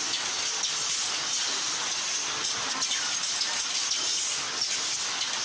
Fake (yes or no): no